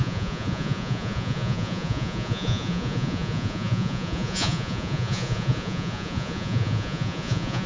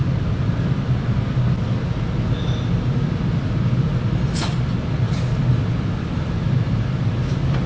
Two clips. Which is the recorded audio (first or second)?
second